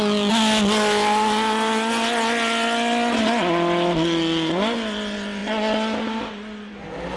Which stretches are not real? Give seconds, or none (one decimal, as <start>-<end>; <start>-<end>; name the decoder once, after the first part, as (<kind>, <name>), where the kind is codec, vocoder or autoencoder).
none